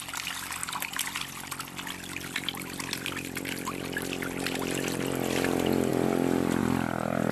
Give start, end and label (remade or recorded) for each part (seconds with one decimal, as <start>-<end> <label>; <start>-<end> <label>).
0.0-7.3 recorded